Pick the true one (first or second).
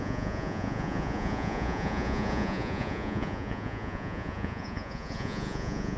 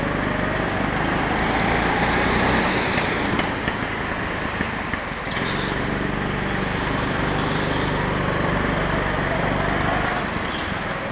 second